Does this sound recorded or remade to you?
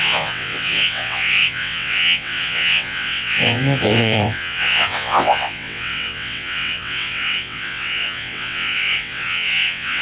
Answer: remade